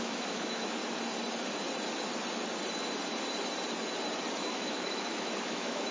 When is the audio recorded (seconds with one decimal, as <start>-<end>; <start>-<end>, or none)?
0.8-4.3